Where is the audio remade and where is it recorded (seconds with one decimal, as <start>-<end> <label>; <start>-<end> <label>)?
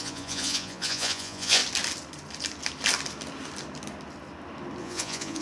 0.0-1.6 remade; 1.6-4.8 recorded; 4.8-5.4 remade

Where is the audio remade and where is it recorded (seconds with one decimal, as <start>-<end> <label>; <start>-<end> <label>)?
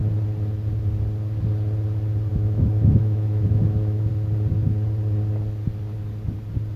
0.0-2.3 recorded; 2.3-4.1 remade; 4.1-6.8 recorded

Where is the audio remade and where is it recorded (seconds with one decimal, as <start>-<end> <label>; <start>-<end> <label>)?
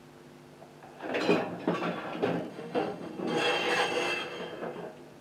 0.0-2.5 recorded; 2.5-3.1 remade; 3.1-5.2 recorded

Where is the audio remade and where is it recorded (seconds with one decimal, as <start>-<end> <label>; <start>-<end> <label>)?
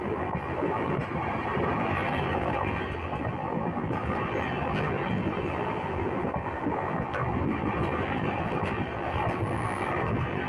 0.0-1.0 remade; 1.0-1.7 recorded; 1.7-10.5 remade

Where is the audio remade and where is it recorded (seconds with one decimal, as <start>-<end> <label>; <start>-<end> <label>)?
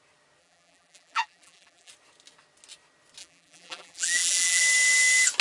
0.0-0.4 recorded; 0.4-1.9 remade; 1.9-3.2 recorded; 3.2-4.6 remade; 4.6-5.4 recorded